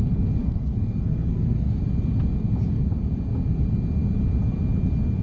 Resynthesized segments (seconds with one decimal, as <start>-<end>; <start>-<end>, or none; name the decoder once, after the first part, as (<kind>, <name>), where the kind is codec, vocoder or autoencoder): 0.4-1.8 (codec, SNAC)